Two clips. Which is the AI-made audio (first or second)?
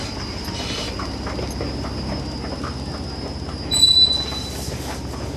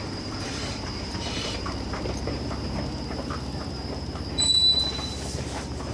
second